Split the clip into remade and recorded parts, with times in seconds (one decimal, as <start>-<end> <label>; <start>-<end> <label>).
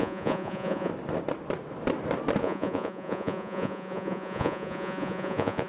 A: 0.0-0.9 remade; 0.9-2.4 recorded; 2.4-5.7 remade